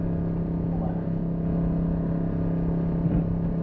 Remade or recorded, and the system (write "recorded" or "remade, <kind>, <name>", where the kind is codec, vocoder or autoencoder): recorded